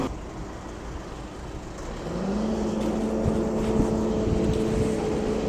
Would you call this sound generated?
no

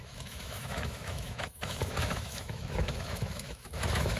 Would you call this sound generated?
yes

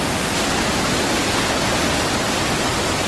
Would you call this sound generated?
no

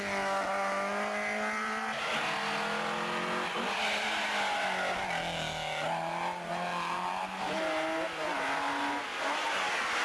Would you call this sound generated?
no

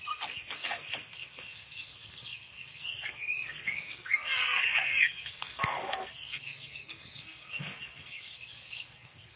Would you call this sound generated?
yes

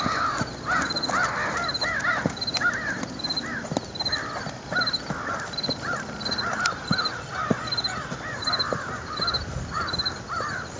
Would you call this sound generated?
no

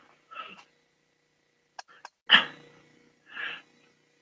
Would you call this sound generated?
no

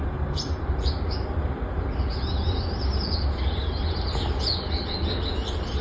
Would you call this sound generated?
no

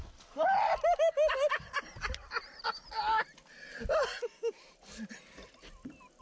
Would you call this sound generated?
no